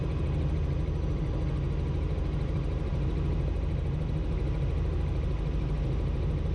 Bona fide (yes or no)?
yes